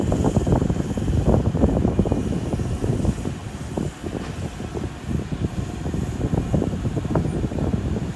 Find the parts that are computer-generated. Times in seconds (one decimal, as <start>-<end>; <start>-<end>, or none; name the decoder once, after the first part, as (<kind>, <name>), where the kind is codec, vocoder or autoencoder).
0.0-3.4 (vocoder, BigVGAN v2); 6.5-8.2